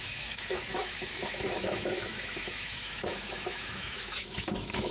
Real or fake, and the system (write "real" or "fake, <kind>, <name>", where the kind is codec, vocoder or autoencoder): fake, autoencoder, DAC-VAE